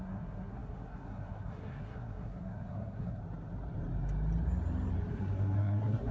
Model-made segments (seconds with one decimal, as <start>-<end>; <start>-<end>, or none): 0.0-3.2; 5.1-6.1